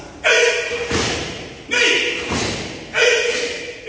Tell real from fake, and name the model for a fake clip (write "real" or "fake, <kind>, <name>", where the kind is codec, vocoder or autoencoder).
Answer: real